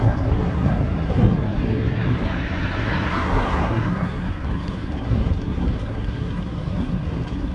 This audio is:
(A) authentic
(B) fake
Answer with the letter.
B